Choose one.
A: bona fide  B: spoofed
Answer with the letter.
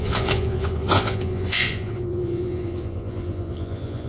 B